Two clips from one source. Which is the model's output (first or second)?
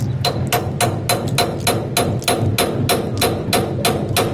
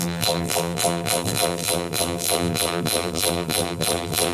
second